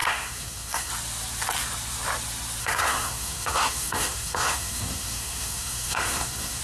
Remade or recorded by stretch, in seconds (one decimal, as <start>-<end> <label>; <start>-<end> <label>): 0.0-0.9 remade; 0.9-2.6 recorded; 2.6-6.6 remade